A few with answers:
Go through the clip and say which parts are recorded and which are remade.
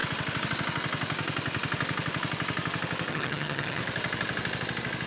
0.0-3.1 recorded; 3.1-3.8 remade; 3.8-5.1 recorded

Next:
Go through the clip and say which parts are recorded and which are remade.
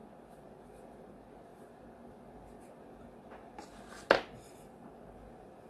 0.0-5.7 recorded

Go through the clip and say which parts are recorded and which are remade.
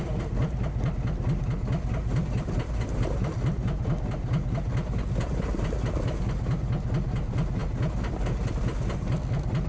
0.0-9.7 recorded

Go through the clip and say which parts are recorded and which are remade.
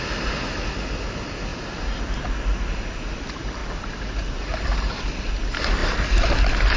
0.0-1.5 recorded; 1.5-2.0 remade; 2.0-3.6 recorded; 3.6-4.9 remade; 4.9-6.8 recorded